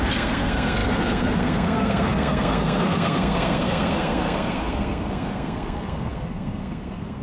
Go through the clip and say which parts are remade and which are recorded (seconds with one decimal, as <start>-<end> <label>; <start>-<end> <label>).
0.0-7.2 remade